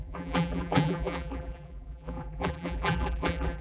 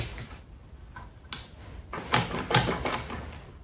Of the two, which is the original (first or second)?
second